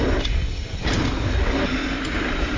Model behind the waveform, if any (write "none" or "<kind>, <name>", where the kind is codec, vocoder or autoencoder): none